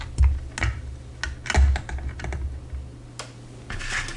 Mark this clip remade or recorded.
recorded